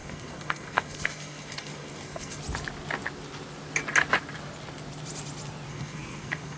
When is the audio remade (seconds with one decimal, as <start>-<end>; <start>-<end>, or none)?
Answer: 0.0-2.4; 5.7-6.6